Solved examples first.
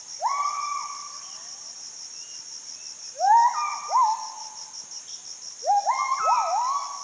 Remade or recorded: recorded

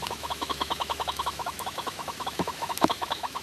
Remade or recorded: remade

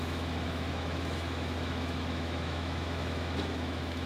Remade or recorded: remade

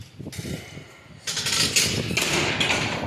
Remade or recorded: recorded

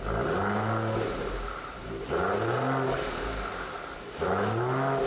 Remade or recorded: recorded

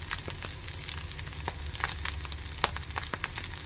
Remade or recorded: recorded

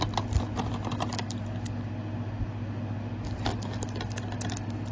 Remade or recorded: recorded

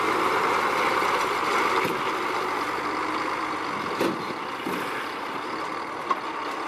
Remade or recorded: recorded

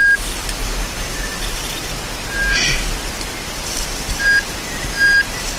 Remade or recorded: recorded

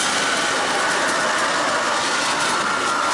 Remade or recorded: recorded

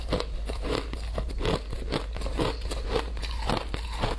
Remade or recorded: recorded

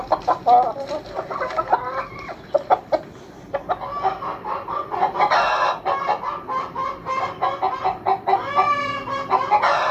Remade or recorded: recorded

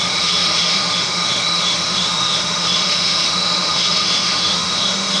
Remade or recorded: remade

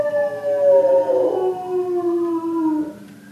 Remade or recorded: recorded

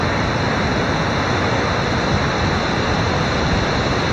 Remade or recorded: recorded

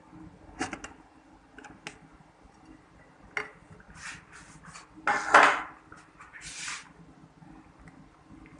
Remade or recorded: recorded